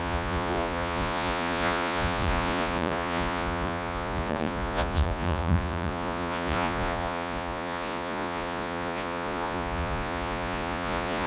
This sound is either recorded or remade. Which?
remade